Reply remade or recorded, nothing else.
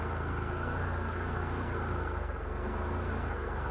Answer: remade